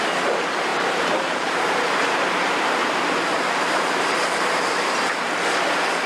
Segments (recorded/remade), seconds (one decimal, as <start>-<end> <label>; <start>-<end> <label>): 0.0-0.7 recorded; 0.7-4.4 remade; 4.4-6.1 recorded